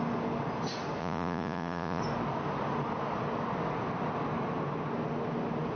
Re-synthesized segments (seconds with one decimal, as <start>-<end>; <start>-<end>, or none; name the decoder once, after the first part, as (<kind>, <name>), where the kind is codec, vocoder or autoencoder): 1.0-2.0 (vocoder, Vocos)